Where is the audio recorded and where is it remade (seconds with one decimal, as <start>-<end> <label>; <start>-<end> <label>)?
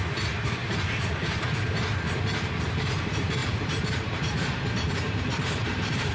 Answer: 0.0-3.4 recorded; 3.4-6.1 remade